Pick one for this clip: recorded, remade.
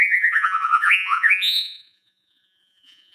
remade